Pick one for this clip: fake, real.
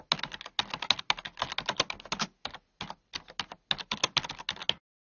real